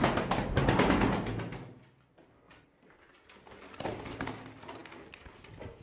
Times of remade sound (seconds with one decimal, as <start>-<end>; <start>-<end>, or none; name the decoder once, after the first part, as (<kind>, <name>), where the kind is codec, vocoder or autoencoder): 0.0-0.6 (vocoder, BigVGAN v2); 4.1-5.8